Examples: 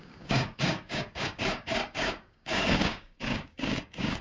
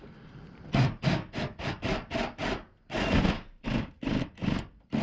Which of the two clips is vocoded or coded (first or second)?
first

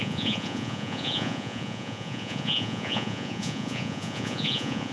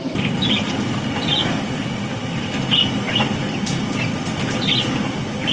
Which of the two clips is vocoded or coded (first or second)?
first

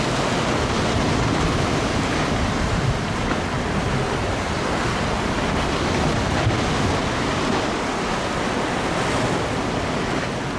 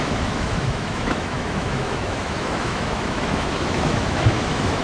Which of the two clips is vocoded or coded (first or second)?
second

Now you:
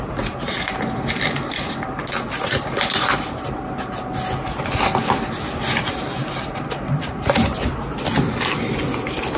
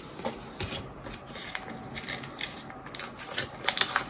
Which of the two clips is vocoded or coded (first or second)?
first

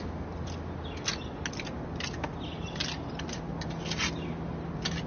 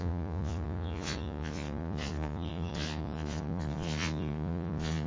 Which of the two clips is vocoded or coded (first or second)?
second